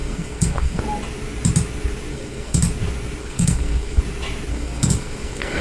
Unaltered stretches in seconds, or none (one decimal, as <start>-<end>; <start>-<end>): 0.8-2.1; 2.6-3.2; 4.0-4.5